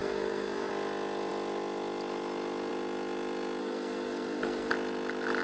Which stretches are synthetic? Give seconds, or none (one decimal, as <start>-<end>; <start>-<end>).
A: 0.0-0.7; 3.6-4.7